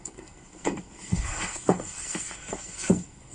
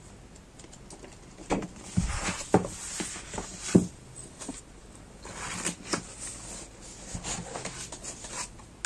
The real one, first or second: second